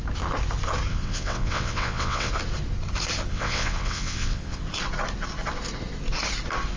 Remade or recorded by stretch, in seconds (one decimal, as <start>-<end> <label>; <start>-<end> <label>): 0.0-0.9 recorded; 0.9-2.3 remade; 2.3-3.3 recorded; 3.3-4.6 remade; 4.6-6.8 recorded